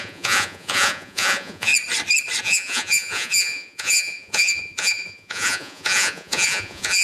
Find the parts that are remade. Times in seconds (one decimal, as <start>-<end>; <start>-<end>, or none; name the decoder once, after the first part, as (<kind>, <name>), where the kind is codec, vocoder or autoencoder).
0.0-1.7 (vocoder, Vocos); 2.4-7.0